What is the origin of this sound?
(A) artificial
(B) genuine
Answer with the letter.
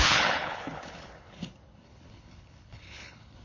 A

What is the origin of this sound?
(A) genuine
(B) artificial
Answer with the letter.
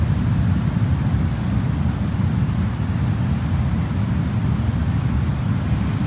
A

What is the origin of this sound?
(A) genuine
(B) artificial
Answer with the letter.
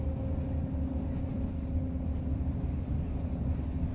A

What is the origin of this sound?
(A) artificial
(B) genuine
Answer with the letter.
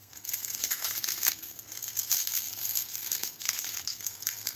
A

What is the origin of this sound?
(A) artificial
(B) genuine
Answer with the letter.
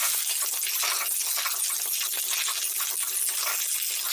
B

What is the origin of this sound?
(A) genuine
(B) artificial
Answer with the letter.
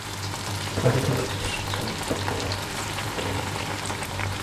B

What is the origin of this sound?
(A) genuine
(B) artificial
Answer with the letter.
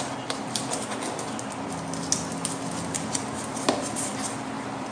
A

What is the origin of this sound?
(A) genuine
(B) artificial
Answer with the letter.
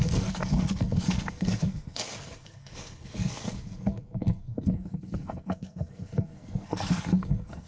B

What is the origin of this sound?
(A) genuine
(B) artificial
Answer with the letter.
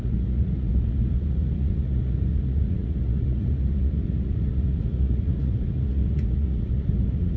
B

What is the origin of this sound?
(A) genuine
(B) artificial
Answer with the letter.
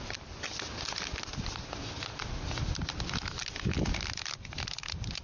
A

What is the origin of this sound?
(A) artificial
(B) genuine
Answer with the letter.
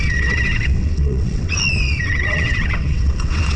A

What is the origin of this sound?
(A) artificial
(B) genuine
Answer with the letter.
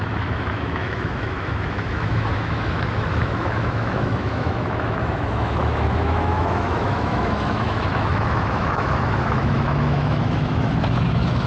A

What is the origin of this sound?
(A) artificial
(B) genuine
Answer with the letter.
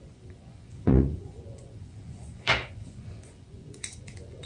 A